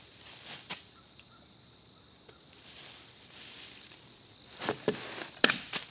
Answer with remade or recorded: remade